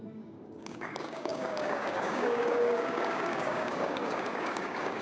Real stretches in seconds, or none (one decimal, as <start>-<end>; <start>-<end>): none